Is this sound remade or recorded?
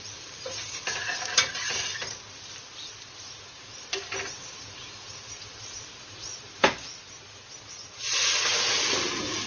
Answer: recorded